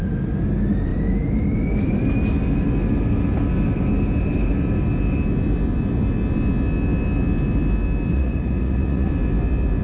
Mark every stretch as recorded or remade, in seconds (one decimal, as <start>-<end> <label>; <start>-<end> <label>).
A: 0.0-8.1 recorded; 8.1-9.1 remade; 9.1-9.8 recorded